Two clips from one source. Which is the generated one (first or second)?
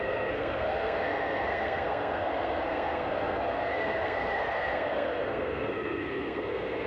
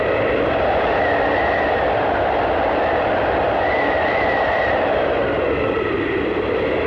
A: first